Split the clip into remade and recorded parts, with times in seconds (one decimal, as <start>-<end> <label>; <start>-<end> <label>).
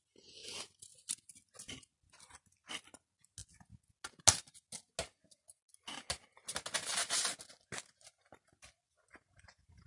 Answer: 0.0-0.4 recorded; 0.4-1.3 remade; 1.3-9.9 recorded